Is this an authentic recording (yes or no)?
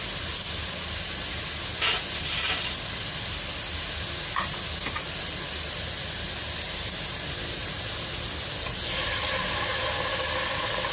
yes